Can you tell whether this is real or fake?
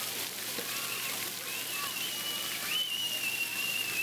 fake